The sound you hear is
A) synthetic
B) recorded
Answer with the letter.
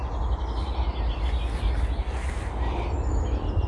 B